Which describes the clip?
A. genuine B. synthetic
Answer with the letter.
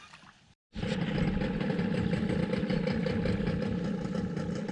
A